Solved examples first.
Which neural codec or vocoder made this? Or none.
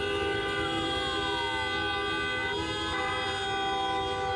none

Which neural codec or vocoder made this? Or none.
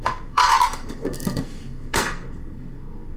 codec, SNAC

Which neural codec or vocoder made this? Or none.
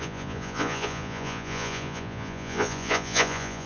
vocoder, Vocos